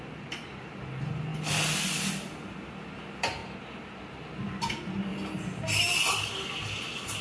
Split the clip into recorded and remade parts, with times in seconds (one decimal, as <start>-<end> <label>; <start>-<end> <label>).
0.0-7.2 recorded